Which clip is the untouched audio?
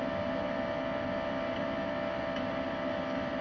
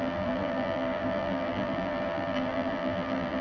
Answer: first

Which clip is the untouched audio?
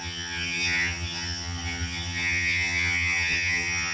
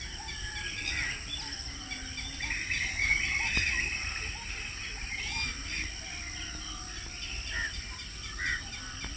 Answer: second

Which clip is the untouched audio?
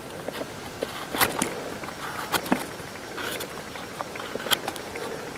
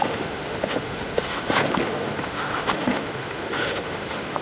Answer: first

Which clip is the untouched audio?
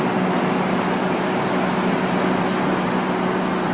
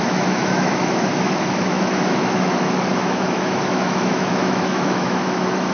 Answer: first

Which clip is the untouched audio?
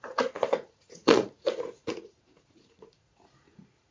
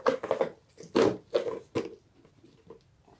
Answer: second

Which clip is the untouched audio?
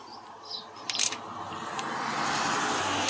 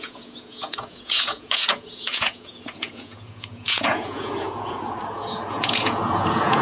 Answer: first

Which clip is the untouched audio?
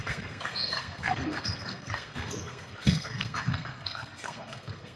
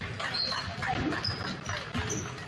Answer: second